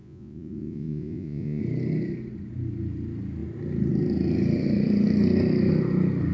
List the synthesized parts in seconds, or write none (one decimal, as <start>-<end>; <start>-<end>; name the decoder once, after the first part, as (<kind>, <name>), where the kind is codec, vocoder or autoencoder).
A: 0.0-1.6 (vocoder, Vocos)